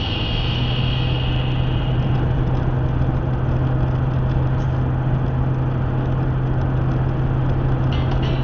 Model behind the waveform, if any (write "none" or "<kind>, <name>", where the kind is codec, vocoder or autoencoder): none